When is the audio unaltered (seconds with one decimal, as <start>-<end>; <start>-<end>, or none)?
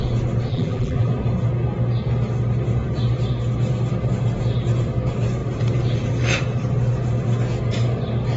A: 0.0-0.5; 1.1-8.4